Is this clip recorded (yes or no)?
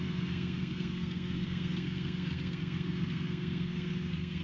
no